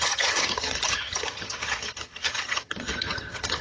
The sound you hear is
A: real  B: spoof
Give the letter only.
B